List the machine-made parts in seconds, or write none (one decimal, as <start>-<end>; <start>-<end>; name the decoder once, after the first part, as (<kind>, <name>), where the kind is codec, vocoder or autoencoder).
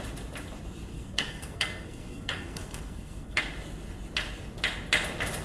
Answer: 0.9-3.4 (codec, SNAC)